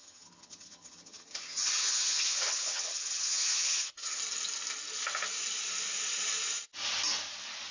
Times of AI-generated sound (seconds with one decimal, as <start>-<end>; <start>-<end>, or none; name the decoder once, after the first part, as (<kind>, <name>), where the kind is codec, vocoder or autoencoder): 0.0-4.2 (vocoder, HiFi-GAN)